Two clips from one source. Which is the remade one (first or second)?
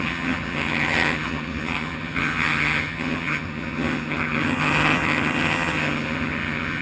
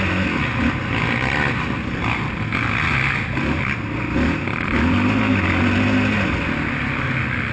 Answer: first